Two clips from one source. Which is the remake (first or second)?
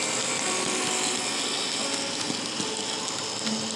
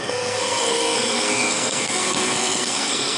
second